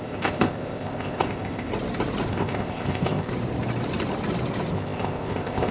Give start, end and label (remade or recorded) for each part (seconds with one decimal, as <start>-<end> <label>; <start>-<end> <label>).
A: 0.0-1.7 remade; 1.7-2.3 recorded; 2.3-3.3 remade; 3.3-4.7 recorded; 4.7-5.7 remade